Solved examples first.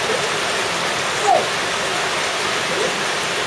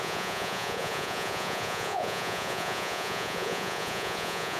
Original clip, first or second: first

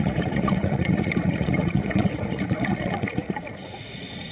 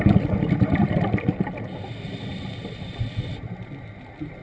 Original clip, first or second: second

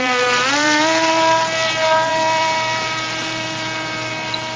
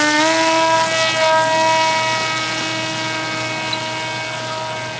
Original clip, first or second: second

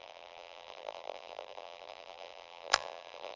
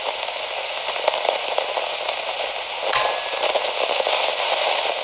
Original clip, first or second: second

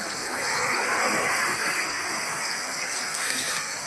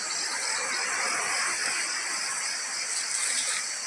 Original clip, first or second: second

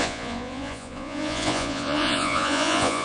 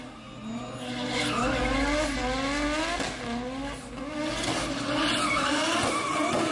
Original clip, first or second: second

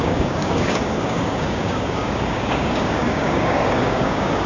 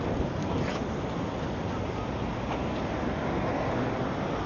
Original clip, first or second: second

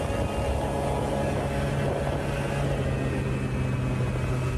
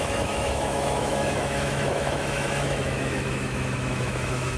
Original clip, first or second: first